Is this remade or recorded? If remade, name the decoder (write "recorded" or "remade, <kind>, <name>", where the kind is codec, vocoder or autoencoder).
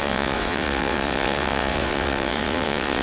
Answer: remade, vocoder, WaveNeXt